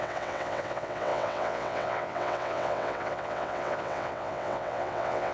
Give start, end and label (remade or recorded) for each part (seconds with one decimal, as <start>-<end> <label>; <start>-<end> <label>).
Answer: 0.0-5.3 remade